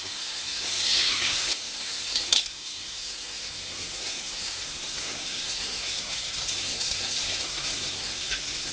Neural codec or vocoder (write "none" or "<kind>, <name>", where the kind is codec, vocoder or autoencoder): codec, SNAC